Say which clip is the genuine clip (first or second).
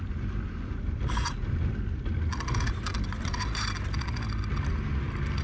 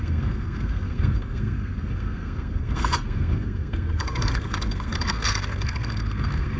first